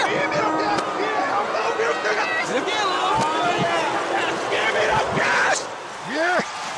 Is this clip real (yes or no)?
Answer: yes